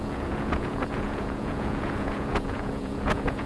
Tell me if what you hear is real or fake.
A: fake